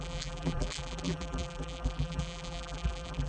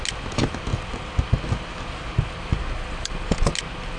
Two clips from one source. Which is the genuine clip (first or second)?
second